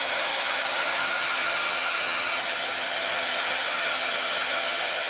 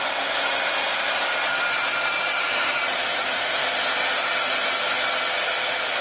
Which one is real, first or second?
second